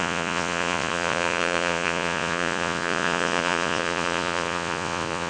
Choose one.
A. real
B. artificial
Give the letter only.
B